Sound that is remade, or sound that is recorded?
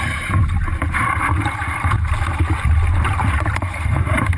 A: remade